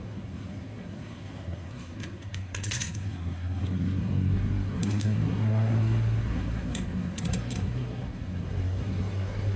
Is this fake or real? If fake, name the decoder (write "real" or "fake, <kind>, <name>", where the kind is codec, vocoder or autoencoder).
fake, codec, SNAC